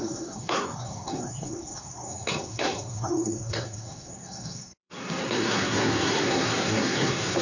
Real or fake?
fake